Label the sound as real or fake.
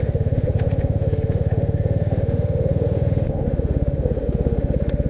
fake